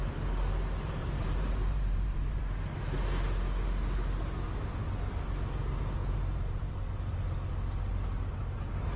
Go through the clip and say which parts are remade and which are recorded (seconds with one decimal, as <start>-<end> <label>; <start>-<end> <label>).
0.0-1.0 recorded; 1.0-2.4 remade; 2.4-6.0 recorded; 6.0-7.1 remade; 7.1-9.0 recorded